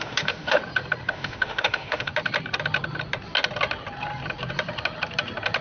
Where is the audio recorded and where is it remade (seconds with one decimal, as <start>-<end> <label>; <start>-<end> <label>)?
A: 0.0-0.6 remade; 0.6-1.1 recorded; 1.1-2.1 remade; 2.1-5.6 recorded